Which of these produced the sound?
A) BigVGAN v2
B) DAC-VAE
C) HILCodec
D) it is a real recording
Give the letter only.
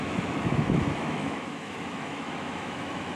B